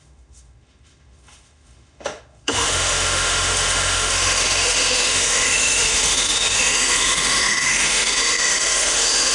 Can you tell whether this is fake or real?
fake